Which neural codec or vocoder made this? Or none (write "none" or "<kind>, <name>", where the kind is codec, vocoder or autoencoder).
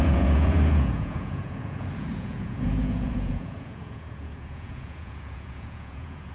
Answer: vocoder, Vocos